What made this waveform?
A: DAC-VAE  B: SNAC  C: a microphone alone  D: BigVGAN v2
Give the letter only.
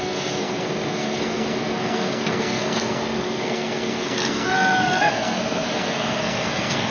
B